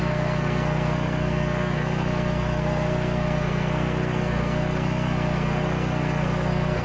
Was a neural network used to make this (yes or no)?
yes